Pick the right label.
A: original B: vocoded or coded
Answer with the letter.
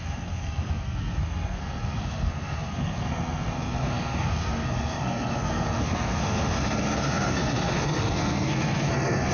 B